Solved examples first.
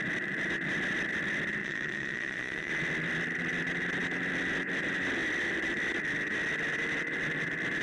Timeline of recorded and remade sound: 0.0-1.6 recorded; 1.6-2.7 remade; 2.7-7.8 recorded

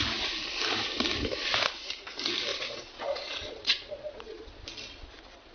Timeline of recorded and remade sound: 0.0-2.5 recorded; 2.5-4.6 remade; 4.6-5.5 recorded

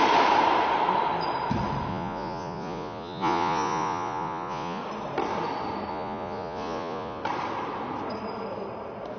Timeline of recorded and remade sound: 0.0-1.9 recorded; 1.9-4.8 remade; 4.8-5.9 recorded; 5.9-7.2 remade; 7.2-9.2 recorded